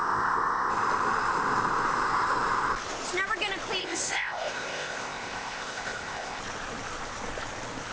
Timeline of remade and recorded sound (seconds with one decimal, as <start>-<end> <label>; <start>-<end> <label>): 0.0-0.7 remade; 0.7-3.8 recorded; 3.8-6.4 remade; 6.4-7.9 recorded